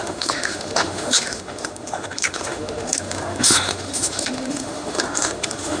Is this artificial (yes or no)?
yes